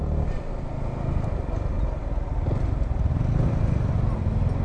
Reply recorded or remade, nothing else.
recorded